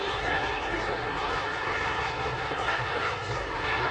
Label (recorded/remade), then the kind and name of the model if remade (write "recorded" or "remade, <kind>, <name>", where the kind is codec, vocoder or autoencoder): remade, codec, SNAC